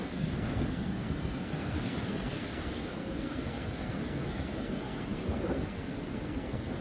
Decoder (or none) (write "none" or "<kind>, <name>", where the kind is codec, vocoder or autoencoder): codec, SNAC